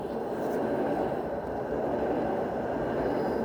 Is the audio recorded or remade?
recorded